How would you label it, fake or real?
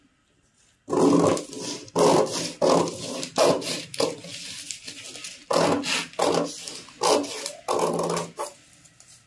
real